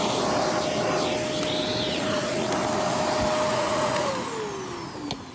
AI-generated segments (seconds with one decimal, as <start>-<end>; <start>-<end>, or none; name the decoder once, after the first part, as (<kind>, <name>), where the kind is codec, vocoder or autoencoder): 1.9-2.5 (vocoder, Vocos); 3.5-4.1